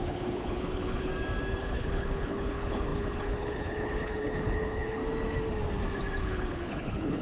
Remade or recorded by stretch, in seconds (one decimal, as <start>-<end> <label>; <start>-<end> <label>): 0.0-1.1 remade; 1.1-1.6 recorded; 1.6-5.0 remade; 5.0-6.2 recorded; 6.2-7.2 remade